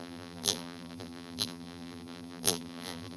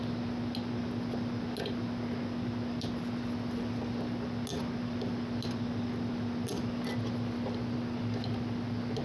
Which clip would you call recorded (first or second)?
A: second